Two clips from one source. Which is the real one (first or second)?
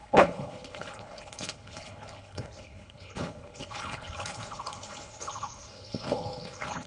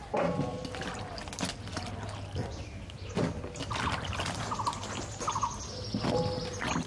second